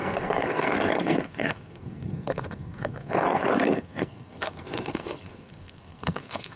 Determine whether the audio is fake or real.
fake